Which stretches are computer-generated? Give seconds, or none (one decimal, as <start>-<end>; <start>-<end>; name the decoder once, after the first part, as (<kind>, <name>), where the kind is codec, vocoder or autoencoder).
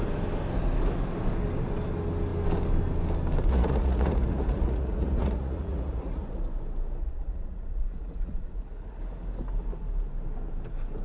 3.5-6.4 (vocoder, Vocos); 7.0-9.0